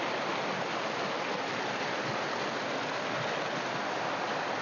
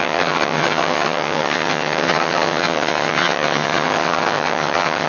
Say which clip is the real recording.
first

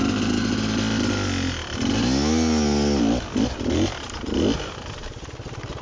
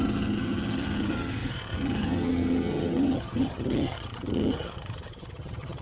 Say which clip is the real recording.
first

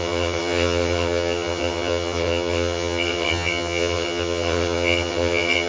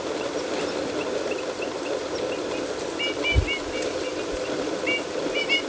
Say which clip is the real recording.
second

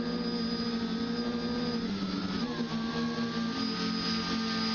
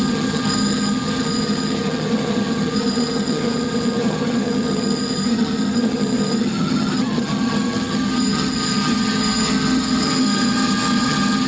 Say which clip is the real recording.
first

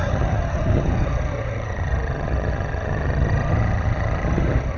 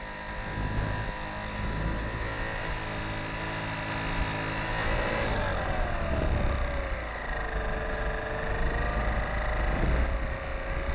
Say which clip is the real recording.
second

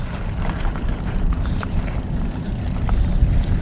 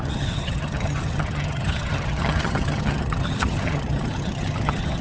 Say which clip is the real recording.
first